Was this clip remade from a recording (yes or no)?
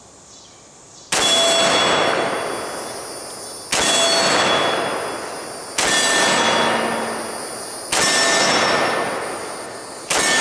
no